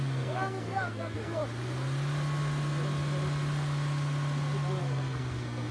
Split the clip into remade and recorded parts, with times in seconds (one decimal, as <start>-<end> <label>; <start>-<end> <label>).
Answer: 0.0-1.4 remade; 1.4-4.8 recorded; 4.8-5.7 remade

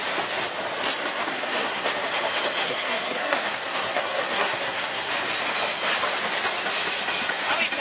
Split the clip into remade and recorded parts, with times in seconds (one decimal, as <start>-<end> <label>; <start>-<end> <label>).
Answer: 0.0-1.3 recorded; 1.3-1.9 remade; 1.9-2.6 recorded; 2.6-5.1 remade; 5.1-7.8 recorded

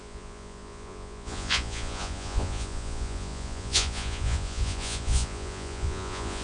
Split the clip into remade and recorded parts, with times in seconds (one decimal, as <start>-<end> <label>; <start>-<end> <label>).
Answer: 0.0-6.4 remade

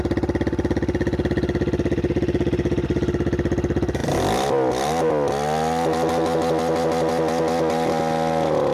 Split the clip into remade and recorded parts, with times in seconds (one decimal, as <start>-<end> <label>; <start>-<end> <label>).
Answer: 0.0-4.0 recorded; 4.0-4.7 remade; 4.7-8.7 recorded

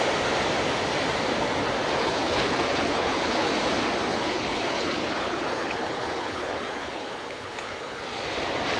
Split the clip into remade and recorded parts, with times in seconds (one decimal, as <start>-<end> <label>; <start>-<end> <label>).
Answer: 0.0-2.0 recorded; 2.0-3.5 remade; 3.5-4.1 recorded; 4.1-8.0 remade; 8.0-8.8 recorded